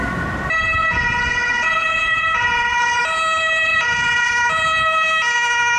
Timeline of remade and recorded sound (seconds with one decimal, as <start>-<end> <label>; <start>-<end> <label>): 0.0-0.8 recorded; 0.8-3.0 remade; 3.0-3.7 recorded; 3.7-4.3 remade; 4.3-5.8 recorded